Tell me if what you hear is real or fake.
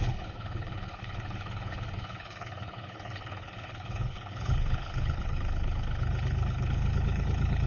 fake